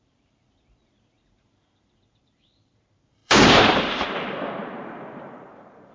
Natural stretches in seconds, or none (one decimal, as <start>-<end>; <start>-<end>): none